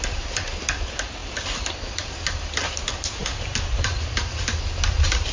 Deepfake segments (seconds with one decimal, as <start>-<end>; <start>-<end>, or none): none